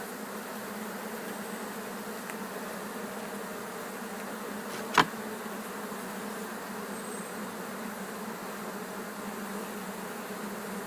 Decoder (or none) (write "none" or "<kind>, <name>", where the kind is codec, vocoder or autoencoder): none